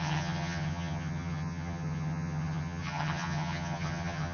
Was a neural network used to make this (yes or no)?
yes